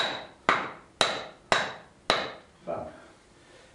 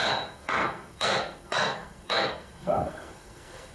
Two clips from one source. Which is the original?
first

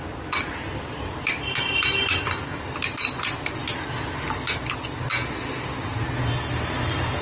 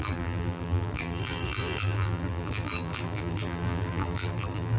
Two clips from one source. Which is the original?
first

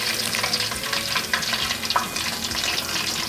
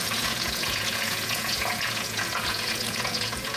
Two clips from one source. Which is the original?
first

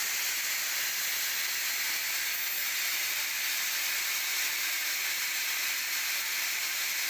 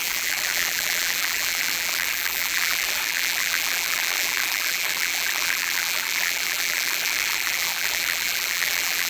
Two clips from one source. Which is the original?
first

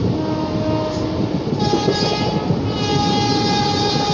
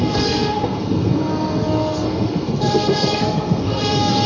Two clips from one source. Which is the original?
first